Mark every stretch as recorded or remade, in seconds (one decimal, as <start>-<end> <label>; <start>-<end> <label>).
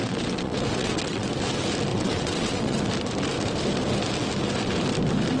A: 0.0-1.3 remade; 1.3-1.9 recorded; 1.9-2.8 remade; 2.8-5.4 recorded